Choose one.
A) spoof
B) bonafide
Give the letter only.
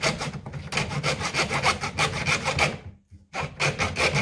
B